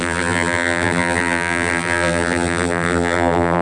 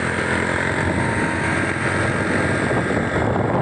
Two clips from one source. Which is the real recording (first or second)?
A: second